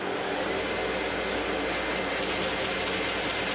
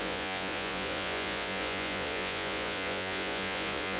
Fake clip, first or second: second